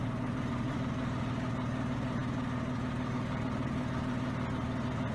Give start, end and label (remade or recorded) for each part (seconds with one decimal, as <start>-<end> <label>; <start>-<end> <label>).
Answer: 0.0-1.2 remade; 1.2-5.1 recorded